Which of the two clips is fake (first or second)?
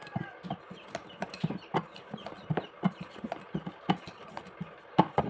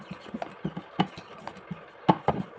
first